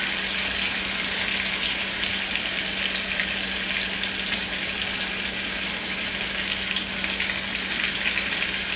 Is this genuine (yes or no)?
yes